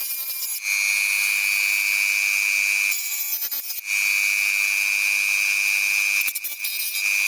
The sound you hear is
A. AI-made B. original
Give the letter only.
B